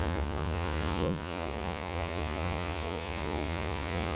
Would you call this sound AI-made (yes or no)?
yes